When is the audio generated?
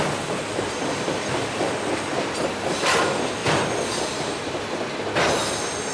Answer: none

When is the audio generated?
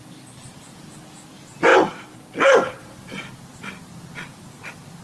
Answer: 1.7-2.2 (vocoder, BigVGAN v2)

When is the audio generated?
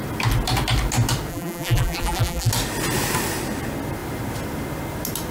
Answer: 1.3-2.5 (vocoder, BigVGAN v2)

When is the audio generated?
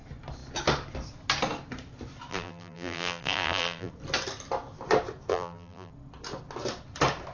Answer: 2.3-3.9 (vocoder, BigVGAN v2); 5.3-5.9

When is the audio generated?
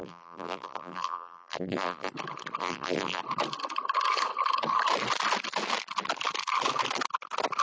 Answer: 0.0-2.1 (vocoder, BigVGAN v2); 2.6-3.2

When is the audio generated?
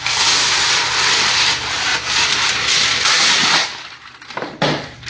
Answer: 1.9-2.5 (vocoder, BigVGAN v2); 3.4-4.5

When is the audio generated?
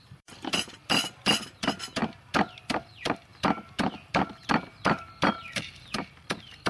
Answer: 0.0-2.0 (vocoder, BigVGAN v2); 2.6-3.3; 5.3-6.7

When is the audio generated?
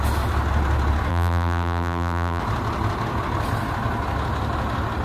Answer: 1.1-2.4 (vocoder, BigVGAN v2)